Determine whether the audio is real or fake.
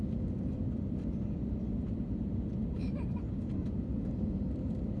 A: real